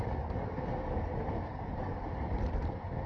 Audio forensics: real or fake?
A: real